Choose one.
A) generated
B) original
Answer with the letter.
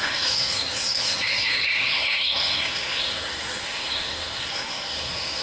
A